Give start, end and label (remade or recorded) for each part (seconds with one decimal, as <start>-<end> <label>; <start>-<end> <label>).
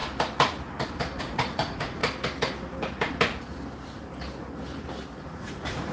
0.0-1.2 recorded; 1.2-2.0 remade; 2.0-5.2 recorded; 5.2-5.9 remade